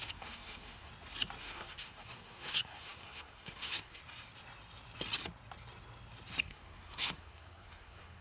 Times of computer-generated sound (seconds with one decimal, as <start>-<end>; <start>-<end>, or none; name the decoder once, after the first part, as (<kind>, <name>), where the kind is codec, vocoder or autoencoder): 0.0-0.9 (codec, SNAC); 1.4-4.0; 6.4-8.2